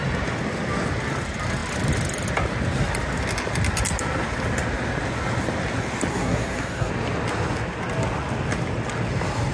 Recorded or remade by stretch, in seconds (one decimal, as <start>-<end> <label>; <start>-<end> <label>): 0.0-6.1 recorded; 6.1-6.9 remade; 6.9-9.5 recorded